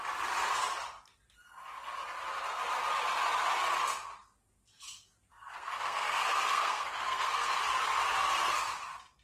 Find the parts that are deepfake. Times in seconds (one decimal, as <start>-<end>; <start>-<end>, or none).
5.3-7.6